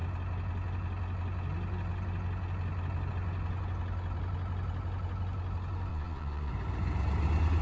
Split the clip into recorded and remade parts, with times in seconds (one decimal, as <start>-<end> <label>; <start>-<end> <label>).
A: 0.0-5.9 recorded; 5.9-6.5 remade; 6.5-7.6 recorded